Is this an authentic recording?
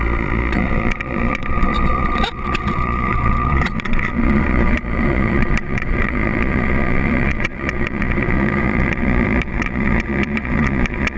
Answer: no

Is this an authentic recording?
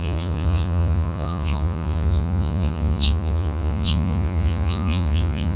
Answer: no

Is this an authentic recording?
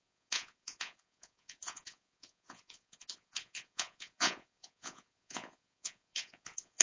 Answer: no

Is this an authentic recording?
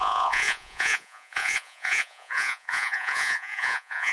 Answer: no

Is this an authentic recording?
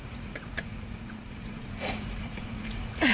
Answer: no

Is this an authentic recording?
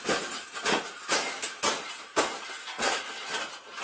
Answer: yes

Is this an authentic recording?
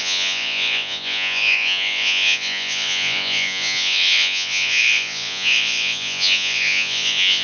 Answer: no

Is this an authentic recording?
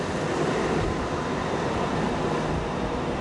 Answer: yes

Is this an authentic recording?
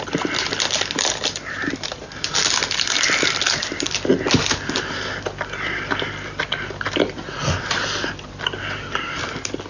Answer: yes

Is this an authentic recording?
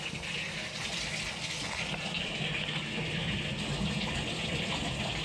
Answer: yes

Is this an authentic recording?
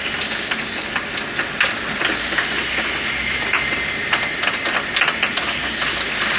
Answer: yes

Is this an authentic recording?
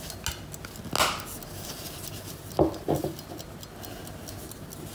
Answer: yes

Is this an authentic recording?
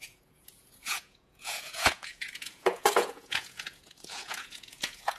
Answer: no